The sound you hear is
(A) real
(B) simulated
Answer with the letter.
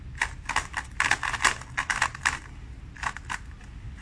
A